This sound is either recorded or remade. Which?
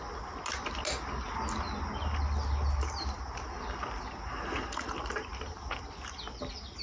recorded